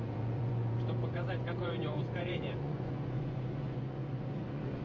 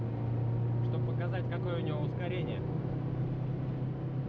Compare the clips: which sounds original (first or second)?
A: second